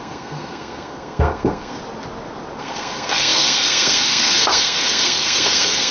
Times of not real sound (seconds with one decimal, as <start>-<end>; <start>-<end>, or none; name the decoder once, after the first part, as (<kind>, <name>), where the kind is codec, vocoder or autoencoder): 0.0-1.8 (codec, SNAC); 2.6-5.9